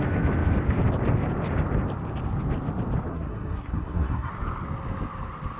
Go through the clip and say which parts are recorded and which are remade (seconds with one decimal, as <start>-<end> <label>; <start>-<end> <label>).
0.0-3.1 recorded; 3.1-4.3 remade; 4.3-5.6 recorded